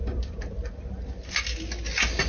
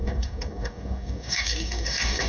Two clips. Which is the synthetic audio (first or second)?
second